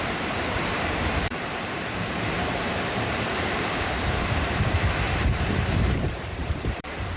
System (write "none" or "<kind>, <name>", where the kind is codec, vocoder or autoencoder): vocoder, BigVGAN v2